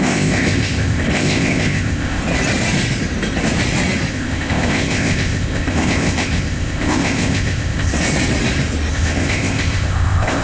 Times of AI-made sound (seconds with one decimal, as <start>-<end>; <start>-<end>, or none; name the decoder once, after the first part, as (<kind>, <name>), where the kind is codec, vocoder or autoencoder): 0.0-2.2 (codec, ZipCodec); 4.1-7.9; 8.9-10.4